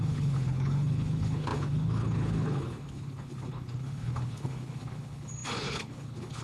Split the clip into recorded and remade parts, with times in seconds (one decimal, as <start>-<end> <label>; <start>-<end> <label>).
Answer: 0.0-6.4 remade